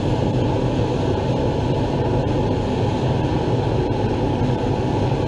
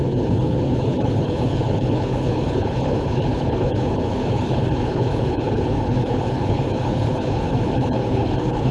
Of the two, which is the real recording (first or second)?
first